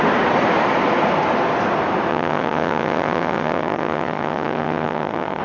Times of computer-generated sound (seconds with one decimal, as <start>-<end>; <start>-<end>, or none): 2.1-5.4